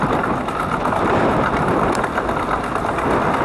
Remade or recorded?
recorded